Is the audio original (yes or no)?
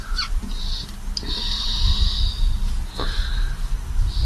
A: yes